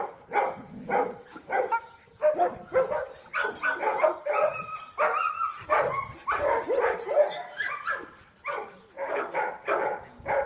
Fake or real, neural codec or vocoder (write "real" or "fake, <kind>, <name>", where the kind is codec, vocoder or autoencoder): real